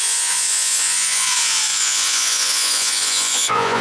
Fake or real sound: fake